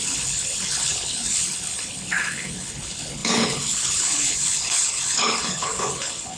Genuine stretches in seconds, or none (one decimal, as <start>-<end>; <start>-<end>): none